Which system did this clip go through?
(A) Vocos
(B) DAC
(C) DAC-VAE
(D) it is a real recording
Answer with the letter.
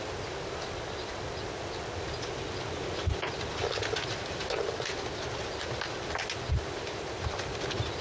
D